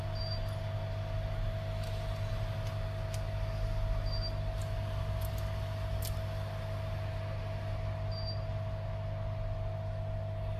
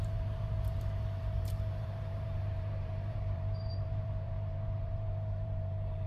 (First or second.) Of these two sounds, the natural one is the first